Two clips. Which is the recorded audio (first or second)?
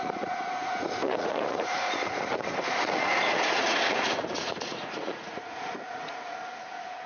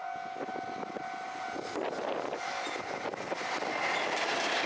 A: second